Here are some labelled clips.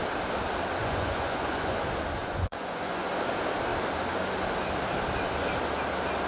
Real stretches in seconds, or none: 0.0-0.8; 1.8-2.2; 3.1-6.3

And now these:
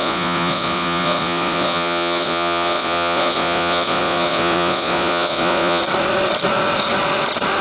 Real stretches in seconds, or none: 5.8-7.6

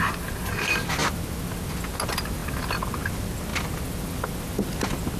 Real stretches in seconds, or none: 0.0-5.2

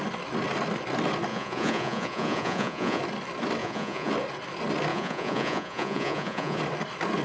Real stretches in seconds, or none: 0.0-1.3; 3.0-3.6; 4.1-4.9; 6.6-7.2

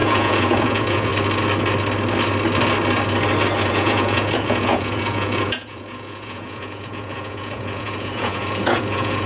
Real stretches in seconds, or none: 1.1-3.7